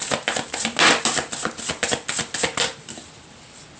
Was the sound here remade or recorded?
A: recorded